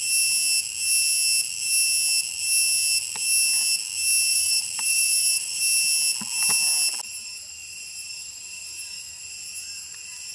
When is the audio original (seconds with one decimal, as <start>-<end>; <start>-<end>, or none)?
0.0-4.3; 5.6-7.6; 9.2-10.3